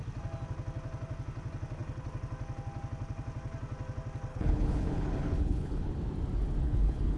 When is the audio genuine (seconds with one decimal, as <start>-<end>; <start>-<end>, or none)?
0.0-4.3; 5.9-6.6